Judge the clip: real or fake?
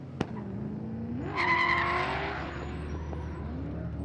real